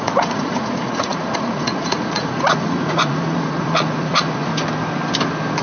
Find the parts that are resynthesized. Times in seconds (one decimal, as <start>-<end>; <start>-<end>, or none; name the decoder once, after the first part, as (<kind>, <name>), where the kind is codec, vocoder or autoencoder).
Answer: 0.0-4.5 (vocoder, Vocos)